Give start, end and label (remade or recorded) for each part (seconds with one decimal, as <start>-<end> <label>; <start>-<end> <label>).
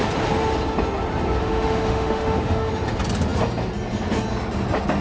0.0-1.4 recorded; 1.4-2.7 remade; 2.7-5.0 recorded